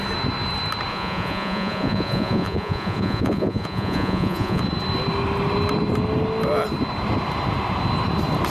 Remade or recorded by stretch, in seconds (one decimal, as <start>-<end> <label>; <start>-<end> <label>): 0.0-0.9 recorded; 0.9-4.6 remade; 4.6-8.5 recorded